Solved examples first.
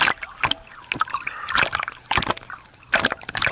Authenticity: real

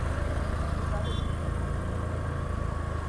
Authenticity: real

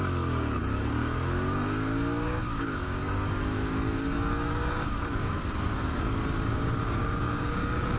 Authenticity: fake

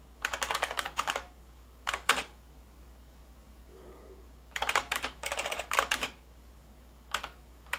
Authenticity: fake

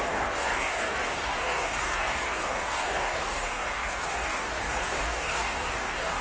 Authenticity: fake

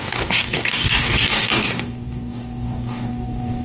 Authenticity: fake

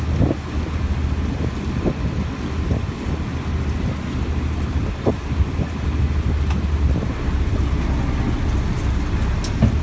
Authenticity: real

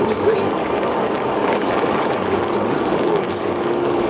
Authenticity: fake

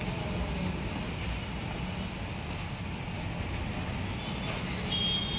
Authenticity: real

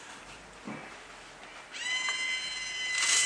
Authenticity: real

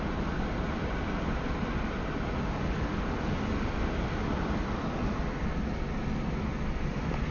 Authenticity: real